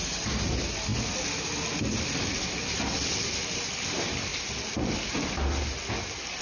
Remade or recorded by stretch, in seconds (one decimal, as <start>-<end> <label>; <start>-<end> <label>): 0.0-6.4 recorded